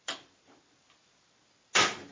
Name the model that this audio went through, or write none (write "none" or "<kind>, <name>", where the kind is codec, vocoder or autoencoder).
none